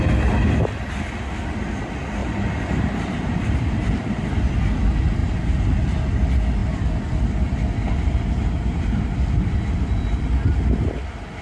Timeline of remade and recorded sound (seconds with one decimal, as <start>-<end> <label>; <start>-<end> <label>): 0.0-2.2 recorded; 2.2-4.3 remade; 4.3-11.4 recorded